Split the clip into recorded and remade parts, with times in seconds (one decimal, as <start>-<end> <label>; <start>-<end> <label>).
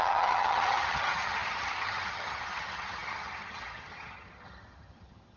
0.0-5.4 remade